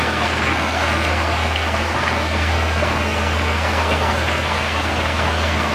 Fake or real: fake